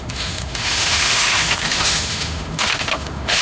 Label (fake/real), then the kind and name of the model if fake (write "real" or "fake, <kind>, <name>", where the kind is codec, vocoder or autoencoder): fake, autoencoder, DAC-VAE